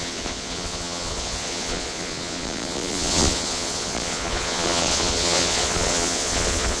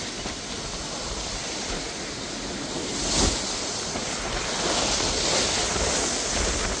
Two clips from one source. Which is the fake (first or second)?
first